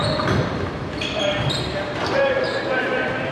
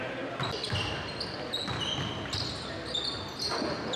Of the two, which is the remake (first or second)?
first